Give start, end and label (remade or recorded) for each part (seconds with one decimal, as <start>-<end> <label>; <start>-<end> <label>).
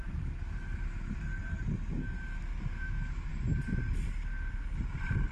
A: 0.0-1.3 remade; 1.3-2.7 recorded; 2.7-3.3 remade; 3.3-5.3 recorded